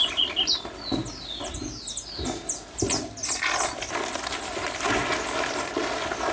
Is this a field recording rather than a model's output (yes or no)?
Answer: yes